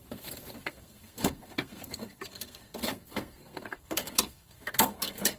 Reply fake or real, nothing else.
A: fake